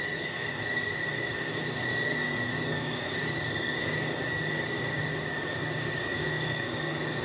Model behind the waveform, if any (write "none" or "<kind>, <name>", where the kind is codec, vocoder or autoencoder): codec, DAC